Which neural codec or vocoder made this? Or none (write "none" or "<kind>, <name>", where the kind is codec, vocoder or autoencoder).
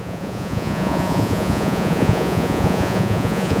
vocoder, Vocos